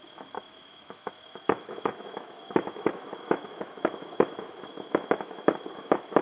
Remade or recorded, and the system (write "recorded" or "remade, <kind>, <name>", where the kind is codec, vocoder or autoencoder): remade, autoencoder, DAC-VAE